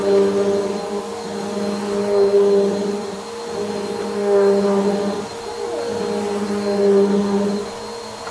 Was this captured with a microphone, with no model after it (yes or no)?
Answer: yes